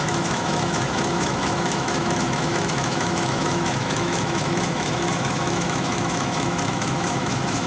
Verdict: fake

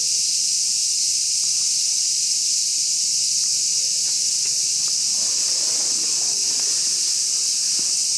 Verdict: real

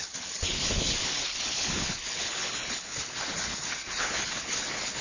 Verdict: fake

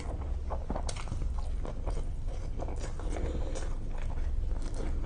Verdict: real